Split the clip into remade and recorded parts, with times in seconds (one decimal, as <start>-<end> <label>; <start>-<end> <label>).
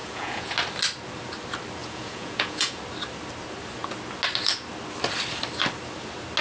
0.0-0.5 remade; 0.5-1.8 recorded; 1.8-2.8 remade; 2.8-6.4 recorded